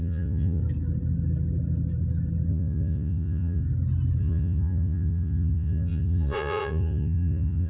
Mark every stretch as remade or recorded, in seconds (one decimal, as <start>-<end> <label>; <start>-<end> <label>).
0.0-0.6 remade; 0.6-2.5 recorded; 2.5-3.6 remade; 3.6-4.2 recorded; 4.2-7.7 remade